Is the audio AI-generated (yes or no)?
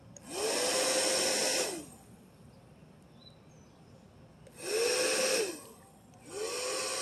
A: no